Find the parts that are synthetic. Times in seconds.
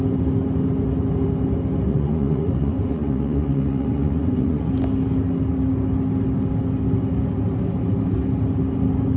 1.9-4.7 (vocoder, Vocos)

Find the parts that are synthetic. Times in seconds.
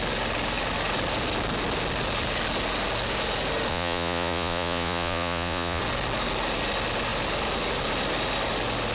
3.7-5.8 (vocoder, Vocos)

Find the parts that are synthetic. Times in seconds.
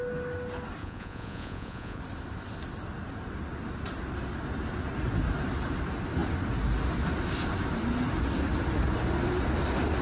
0.8-2.0 (vocoder, Vocos)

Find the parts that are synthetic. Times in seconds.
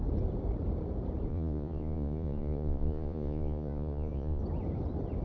1.3-4.4 (vocoder, Vocos)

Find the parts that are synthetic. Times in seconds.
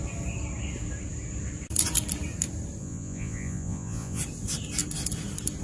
2.8-4.2 (vocoder, Vocos)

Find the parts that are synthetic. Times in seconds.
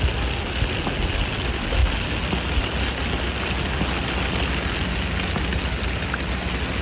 none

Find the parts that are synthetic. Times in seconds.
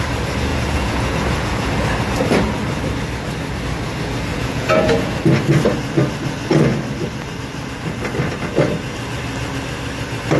0.5-1.7 (vocoder, Vocos); 4.3-5.2